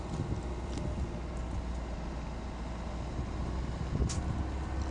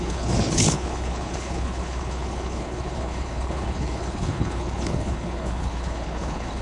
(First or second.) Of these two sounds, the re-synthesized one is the second